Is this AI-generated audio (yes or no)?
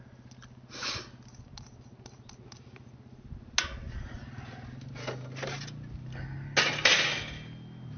no